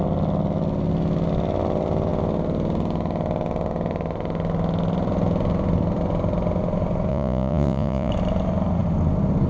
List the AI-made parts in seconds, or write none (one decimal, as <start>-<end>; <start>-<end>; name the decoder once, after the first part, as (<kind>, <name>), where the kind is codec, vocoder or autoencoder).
7.1-8.1 (vocoder, Vocos)